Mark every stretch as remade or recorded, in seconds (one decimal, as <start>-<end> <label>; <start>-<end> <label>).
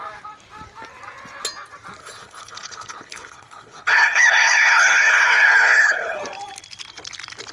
0.0-2.0 recorded; 2.0-6.2 remade; 6.2-7.5 recorded